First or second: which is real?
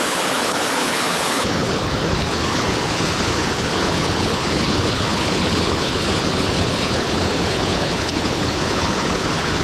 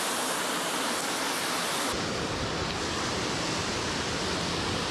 second